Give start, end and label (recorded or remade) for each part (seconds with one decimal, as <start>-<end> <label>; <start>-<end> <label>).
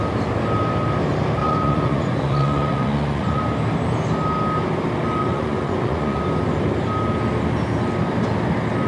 0.0-1.4 recorded; 1.4-3.4 remade; 3.4-5.2 recorded; 5.2-6.2 remade; 6.2-8.9 recorded